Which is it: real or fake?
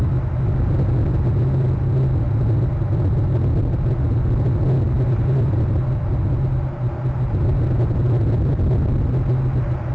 real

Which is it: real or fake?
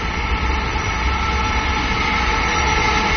real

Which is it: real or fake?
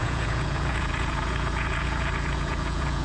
fake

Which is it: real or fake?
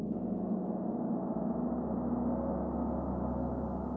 real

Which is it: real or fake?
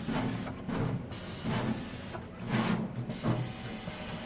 real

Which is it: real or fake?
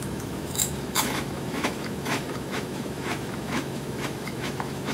fake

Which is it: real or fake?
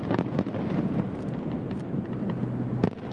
real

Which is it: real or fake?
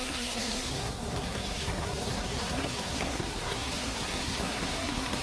fake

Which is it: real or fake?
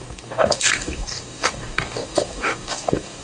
fake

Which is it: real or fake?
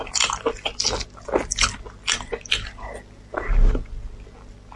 real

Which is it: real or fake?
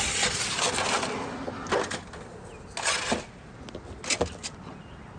real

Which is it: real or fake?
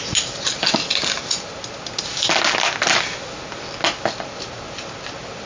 real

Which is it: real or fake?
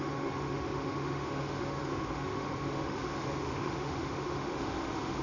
fake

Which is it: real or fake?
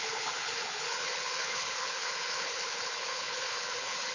fake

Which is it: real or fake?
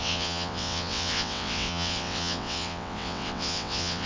fake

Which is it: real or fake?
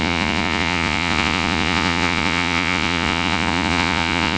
fake